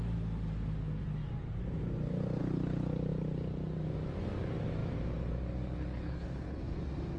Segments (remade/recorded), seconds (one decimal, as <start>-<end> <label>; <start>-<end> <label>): 0.0-5.9 recorded; 5.9-6.8 remade; 6.8-7.2 recorded